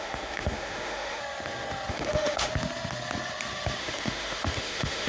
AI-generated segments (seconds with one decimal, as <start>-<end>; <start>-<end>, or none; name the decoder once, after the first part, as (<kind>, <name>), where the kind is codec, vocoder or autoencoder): 0.0-1.2 (autoencoder, DAC-VAE); 1.9-2.5; 3.8-5.1